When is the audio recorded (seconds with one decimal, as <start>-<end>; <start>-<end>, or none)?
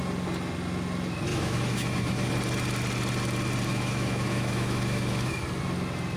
0.0-1.3; 2.3-3.7; 5.4-6.2